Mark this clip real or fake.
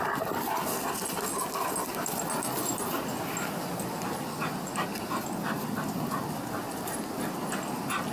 real